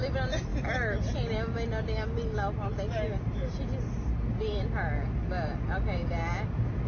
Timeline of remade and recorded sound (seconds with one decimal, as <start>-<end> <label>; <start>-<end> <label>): 0.0-6.9 recorded